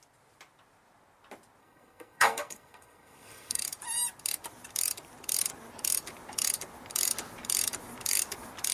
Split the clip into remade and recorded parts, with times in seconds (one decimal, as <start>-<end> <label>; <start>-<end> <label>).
0.0-1.6 recorded; 1.6-3.6 remade; 3.6-8.7 recorded